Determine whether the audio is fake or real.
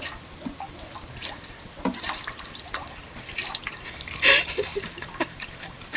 fake